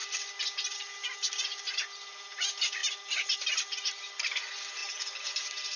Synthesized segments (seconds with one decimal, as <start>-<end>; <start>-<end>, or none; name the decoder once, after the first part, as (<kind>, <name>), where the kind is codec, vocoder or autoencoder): none